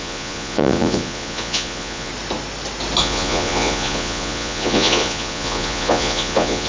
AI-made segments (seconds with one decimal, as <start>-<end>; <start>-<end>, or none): 0.0-2.1; 3.0-6.7